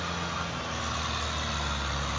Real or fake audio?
real